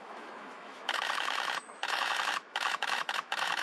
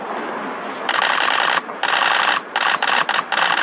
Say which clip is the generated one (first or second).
first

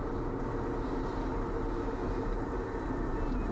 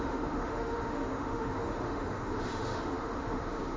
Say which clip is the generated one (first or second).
second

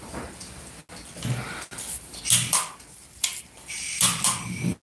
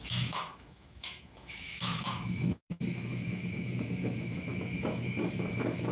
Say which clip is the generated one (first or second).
second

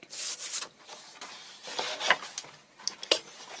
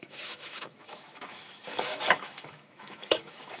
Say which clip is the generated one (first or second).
second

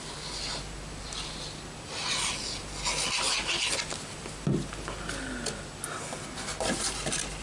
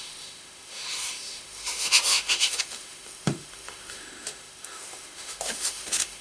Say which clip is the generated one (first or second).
second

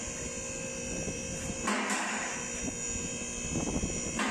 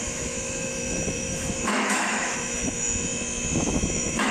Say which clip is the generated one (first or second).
second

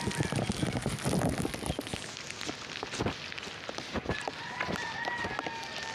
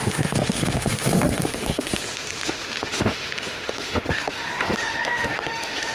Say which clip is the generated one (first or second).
second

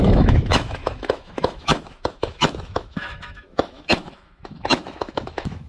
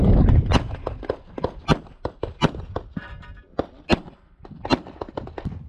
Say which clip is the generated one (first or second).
first